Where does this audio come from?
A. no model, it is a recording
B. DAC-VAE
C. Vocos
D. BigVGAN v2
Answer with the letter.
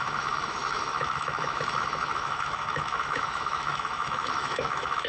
B